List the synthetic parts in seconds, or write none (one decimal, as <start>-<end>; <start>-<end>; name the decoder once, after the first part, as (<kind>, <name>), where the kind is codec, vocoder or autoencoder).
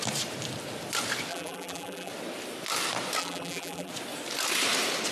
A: 1.3-2.1 (vocoder, BigVGAN v2); 3.2-3.9